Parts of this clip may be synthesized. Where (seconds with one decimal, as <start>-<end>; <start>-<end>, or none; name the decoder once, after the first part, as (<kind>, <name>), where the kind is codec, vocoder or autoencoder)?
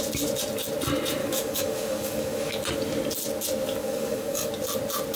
1.2-2.5 (codec, DAC); 3.8-4.5